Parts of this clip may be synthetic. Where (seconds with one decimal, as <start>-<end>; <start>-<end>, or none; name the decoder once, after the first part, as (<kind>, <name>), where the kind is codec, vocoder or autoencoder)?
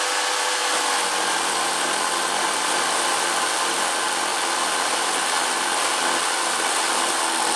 none